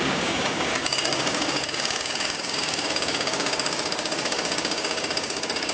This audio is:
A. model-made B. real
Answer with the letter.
A